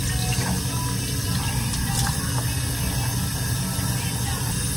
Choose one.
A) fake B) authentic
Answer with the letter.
B